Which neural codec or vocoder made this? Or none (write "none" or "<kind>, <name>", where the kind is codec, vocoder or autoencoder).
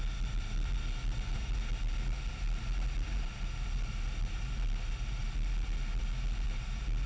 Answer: none